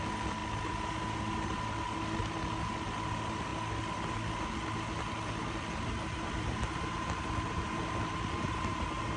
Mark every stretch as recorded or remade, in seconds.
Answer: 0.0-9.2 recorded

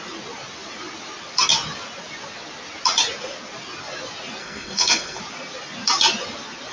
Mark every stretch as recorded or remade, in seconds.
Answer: 0.0-4.4 recorded; 4.4-5.2 remade; 5.2-6.7 recorded

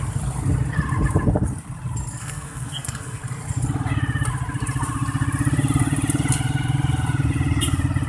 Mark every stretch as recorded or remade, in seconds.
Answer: 0.0-2.2 recorded; 2.2-3.2 remade; 3.2-8.1 recorded

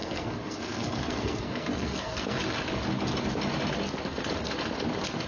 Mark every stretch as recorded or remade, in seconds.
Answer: 0.0-2.4 remade; 2.4-5.3 recorded

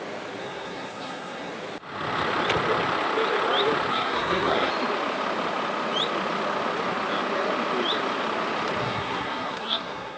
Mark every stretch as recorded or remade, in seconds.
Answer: 0.0-0.4 recorded; 0.4-1.5 remade; 1.5-3.9 recorded; 3.9-4.7 remade; 4.7-8.8 recorded; 8.8-10.2 remade

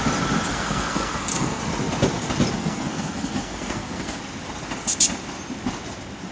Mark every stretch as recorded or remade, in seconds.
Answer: 0.0-0.5 recorded; 0.5-1.6 remade; 1.6-2.6 recorded; 2.6-4.2 remade; 4.2-6.3 recorded

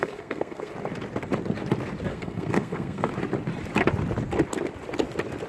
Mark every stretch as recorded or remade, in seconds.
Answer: 0.0-0.7 remade; 0.7-2.1 recorded; 2.1-3.1 remade; 3.1-5.5 recorded

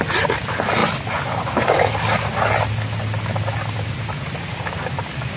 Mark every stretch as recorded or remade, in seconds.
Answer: 0.0-5.4 recorded